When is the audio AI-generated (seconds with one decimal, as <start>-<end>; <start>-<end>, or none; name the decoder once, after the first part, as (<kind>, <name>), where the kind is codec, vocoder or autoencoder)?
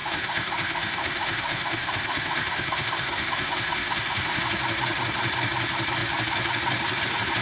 0.0-4.4 (autoencoder, DAC-VAE)